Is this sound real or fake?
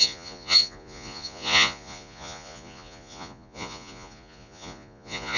fake